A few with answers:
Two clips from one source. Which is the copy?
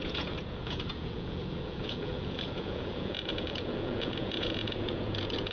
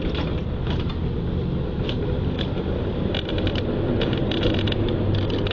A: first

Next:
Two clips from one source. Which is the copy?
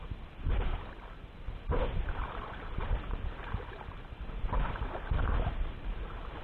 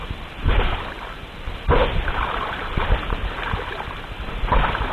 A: first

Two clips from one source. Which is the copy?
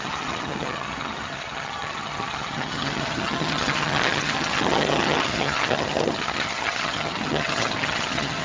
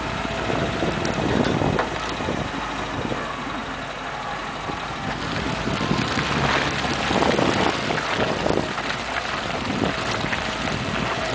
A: first